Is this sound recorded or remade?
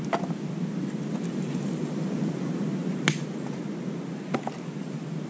recorded